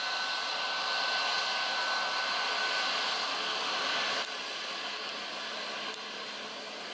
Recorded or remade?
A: recorded